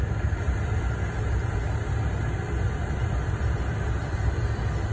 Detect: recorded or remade recorded